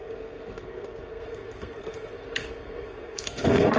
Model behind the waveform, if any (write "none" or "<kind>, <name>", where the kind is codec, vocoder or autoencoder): codec, SNAC